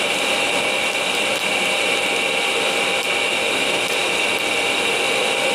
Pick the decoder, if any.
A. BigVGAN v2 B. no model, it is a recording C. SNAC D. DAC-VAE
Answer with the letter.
B